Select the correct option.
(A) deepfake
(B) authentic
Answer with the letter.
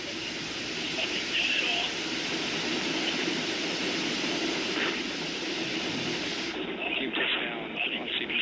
B